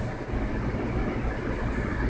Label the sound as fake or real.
real